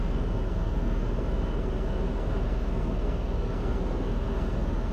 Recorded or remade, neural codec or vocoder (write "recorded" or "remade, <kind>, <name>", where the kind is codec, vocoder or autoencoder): remade, codec, SNAC